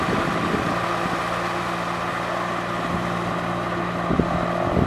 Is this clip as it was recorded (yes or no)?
yes